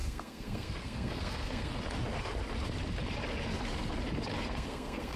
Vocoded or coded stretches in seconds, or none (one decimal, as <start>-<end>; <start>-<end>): 0.0-1.7; 4.4-5.2